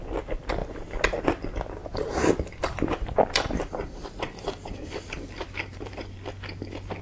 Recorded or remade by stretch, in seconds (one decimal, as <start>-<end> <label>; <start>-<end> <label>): 0.0-1.8 recorded; 1.8-6.0 remade; 6.0-7.0 recorded